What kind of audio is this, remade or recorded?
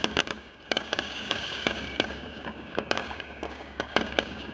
remade